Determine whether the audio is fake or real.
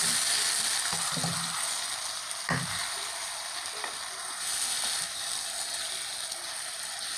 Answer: real